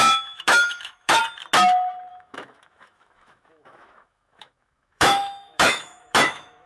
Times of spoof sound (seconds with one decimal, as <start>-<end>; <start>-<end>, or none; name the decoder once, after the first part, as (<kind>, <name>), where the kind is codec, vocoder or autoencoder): 0.0-1.2 (autoencoder, DAC-VAE); 2.1-6.7